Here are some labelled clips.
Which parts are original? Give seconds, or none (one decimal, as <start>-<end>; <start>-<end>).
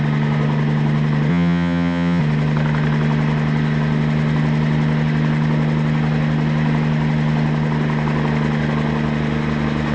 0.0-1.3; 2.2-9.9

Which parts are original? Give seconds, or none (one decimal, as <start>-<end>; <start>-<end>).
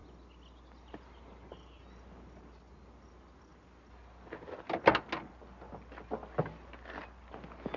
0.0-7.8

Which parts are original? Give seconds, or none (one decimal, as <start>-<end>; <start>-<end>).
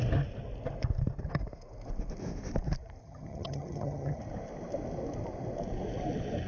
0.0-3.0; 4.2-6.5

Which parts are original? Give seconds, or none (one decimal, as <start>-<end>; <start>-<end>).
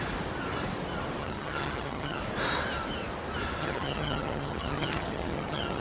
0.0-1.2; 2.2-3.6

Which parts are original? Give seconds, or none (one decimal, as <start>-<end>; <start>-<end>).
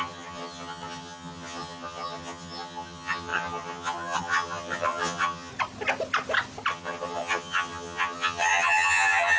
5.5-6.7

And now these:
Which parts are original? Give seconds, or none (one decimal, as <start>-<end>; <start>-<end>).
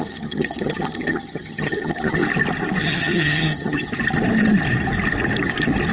2.2-2.8; 3.9-5.9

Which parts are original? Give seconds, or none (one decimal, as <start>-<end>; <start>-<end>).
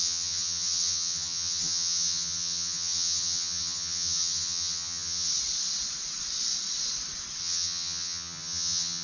5.3-7.4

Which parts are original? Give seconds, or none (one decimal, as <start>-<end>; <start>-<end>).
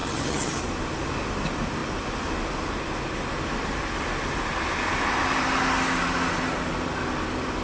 0.6-7.6